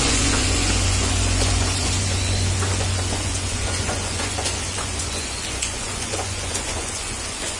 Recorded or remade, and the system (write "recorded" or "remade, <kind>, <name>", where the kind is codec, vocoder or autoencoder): remade, vocoder, Vocos